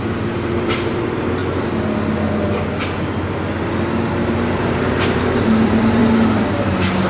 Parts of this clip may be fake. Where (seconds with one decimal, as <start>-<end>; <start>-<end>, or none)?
0.0-1.4; 4.1-6.0; 6.6-7.1